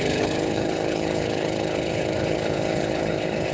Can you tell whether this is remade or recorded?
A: remade